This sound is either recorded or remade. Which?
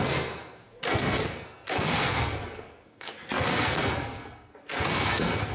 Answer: remade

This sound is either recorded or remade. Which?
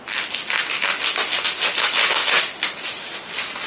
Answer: recorded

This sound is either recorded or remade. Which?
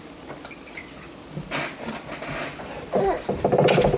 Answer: recorded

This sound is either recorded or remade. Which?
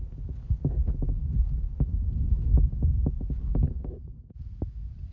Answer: recorded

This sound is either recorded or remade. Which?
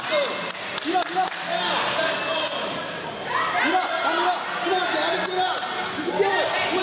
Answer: recorded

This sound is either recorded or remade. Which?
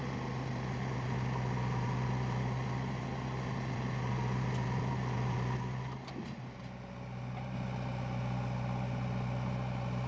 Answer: recorded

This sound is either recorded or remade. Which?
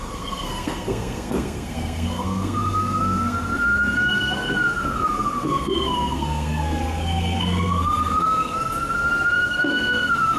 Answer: remade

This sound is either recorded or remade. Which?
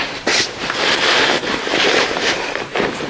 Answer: remade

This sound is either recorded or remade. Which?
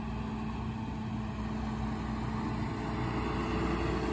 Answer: recorded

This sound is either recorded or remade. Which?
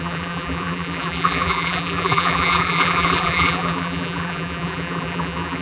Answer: remade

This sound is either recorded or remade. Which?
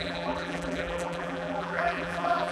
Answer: remade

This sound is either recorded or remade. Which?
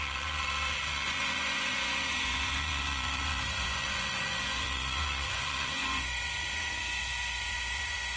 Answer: remade